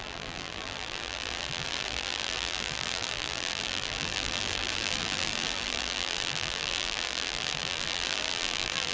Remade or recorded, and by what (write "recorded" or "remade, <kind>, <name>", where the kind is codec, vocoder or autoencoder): remade, vocoder, BigVGAN v2